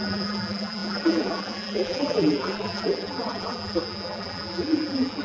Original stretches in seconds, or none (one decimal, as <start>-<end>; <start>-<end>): none